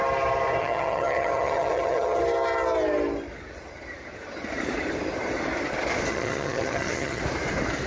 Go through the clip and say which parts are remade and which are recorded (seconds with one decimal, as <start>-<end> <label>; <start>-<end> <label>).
0.0-0.6 recorded; 0.6-2.2 remade; 2.2-6.1 recorded; 6.1-7.2 remade; 7.2-7.9 recorded